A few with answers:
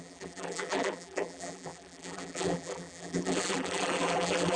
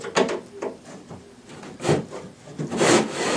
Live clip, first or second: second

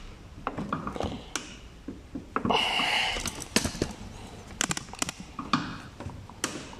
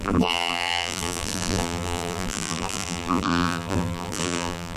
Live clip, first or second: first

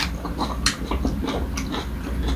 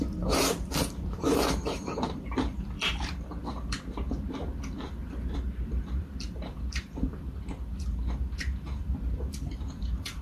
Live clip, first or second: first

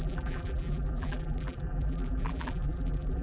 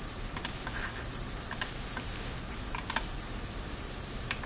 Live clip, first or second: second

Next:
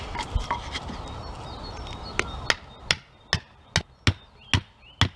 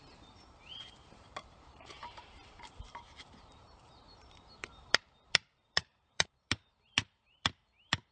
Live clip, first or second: first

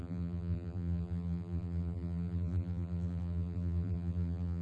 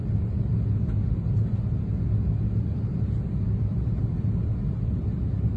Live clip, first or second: second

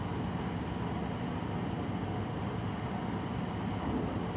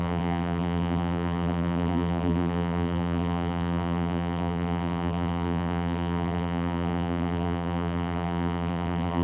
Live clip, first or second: first